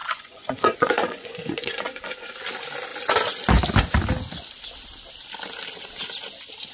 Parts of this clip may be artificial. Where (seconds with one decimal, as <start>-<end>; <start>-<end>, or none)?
0.0-2.3